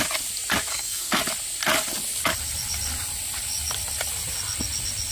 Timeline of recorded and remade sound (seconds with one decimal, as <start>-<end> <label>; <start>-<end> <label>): 0.0-0.7 recorded; 0.7-1.2 remade; 1.2-5.1 recorded